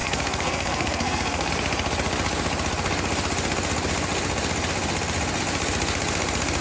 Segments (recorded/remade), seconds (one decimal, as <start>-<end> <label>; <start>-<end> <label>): 0.0-1.5 remade; 1.5-6.6 recorded